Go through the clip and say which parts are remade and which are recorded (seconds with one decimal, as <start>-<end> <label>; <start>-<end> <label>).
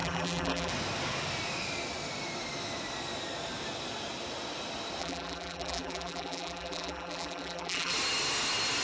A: 0.0-0.7 remade; 0.7-5.0 recorded; 5.0-7.9 remade; 7.9-8.8 recorded